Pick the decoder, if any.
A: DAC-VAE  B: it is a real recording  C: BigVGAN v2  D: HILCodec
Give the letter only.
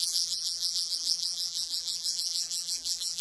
C